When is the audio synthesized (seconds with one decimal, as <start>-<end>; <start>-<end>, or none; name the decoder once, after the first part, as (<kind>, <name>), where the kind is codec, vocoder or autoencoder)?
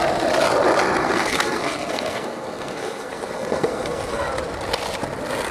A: 1.0-4.3 (codec, SNAC)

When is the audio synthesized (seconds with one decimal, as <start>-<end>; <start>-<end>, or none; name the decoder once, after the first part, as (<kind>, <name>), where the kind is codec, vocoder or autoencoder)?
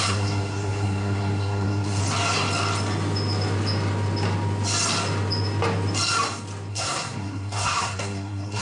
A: 0.0-2.0 (codec, SNAC); 6.7-8.6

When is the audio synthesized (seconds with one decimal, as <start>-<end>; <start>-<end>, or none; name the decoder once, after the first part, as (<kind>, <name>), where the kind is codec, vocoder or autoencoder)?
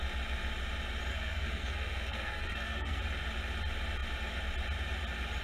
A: 1.1-3.0 (codec, SNAC)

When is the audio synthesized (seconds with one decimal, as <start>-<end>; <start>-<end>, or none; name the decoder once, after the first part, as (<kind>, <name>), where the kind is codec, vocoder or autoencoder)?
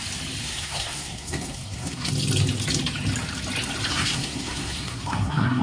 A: 0.4-2.1 (codec, SNAC); 3.9-5.6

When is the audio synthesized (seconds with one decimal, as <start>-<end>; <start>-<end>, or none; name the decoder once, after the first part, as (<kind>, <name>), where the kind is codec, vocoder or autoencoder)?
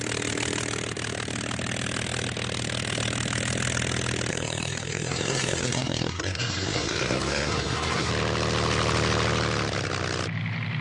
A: 4.3-8.1 (codec, SNAC)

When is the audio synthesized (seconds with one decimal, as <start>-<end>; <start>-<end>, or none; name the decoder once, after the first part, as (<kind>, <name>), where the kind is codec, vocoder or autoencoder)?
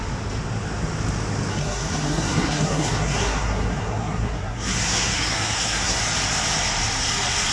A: 1.5-6.0 (codec, SNAC)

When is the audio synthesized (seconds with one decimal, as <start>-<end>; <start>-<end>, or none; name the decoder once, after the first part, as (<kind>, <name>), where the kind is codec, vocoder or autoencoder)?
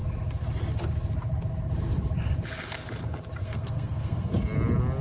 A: 3.4-4.3 (codec, SNAC)